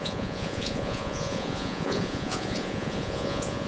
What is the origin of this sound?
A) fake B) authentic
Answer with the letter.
A